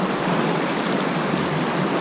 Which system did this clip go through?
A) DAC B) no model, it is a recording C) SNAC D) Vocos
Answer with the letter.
B